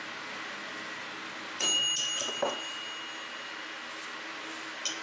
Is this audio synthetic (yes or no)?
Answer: no